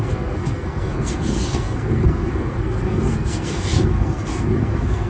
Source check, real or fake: fake